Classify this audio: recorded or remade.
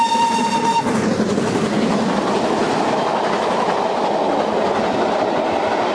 recorded